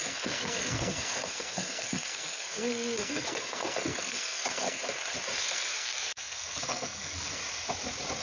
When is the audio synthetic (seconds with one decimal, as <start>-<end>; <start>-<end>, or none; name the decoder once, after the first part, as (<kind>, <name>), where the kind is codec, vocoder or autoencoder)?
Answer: 0.0-4.8 (codec, SNAC); 5.4-7.4